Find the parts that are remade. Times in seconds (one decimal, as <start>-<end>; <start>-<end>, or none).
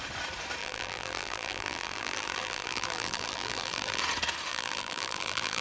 0.6-4.0; 4.5-5.6